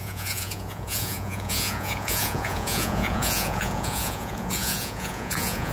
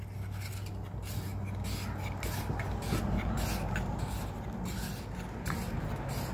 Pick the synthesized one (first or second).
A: first